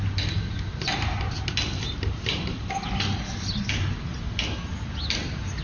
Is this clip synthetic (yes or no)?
no